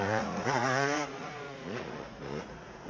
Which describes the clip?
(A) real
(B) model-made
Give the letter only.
B